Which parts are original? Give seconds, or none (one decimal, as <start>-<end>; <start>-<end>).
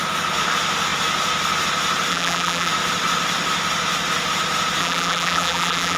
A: 0.0-2.1; 2.7-4.8